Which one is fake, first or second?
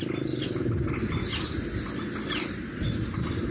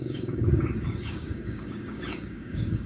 second